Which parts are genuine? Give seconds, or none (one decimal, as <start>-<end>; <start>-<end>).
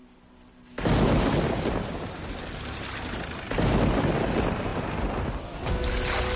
0.0-6.4